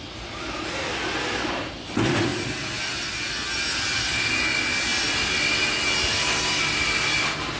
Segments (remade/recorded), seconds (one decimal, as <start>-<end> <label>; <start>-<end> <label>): 0.0-7.6 recorded